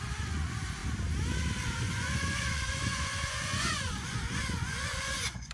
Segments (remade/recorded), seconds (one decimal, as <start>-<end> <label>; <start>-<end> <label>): 0.0-0.8 remade; 0.8-1.8 recorded; 1.8-5.5 remade